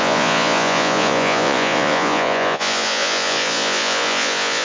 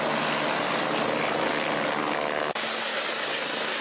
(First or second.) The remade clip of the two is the first